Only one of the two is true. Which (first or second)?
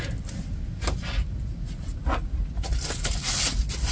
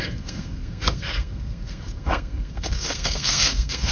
first